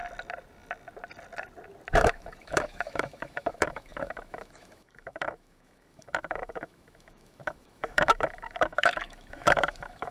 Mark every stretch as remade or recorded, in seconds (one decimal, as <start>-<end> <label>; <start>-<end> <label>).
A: 0.0-1.9 recorded; 1.9-10.1 remade